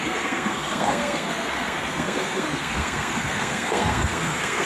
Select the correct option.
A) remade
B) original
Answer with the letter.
A